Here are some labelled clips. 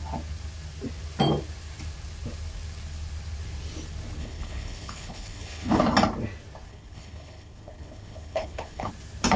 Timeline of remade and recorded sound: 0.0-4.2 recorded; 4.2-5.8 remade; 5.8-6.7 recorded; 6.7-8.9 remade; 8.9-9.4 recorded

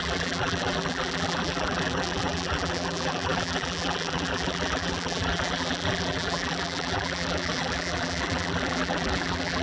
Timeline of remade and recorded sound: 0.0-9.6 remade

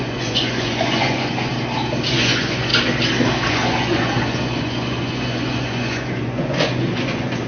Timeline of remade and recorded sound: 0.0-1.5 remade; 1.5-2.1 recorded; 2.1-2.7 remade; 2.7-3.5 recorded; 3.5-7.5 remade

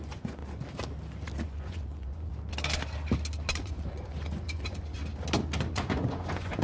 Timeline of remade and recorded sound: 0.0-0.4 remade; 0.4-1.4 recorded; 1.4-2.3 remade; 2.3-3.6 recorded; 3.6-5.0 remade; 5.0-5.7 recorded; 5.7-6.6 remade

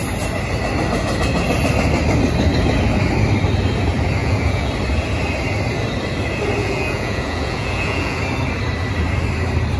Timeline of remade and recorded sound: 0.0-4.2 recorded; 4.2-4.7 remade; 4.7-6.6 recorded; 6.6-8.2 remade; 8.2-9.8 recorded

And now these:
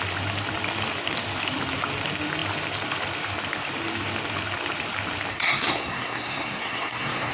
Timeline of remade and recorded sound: 0.0-5.3 recorded; 5.3-7.3 remade

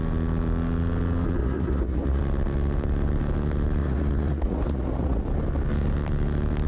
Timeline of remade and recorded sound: 0.0-1.4 recorded; 1.4-2.2 remade; 2.2-3.8 recorded; 3.8-5.2 remade; 5.2-6.7 recorded